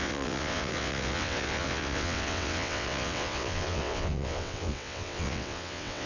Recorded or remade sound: remade